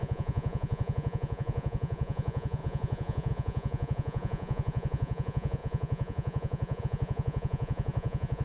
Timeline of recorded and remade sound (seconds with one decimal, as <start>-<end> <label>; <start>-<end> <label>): 0.0-8.4 remade